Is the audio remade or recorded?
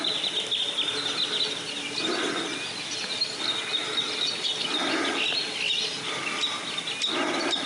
recorded